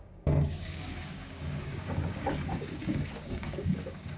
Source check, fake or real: fake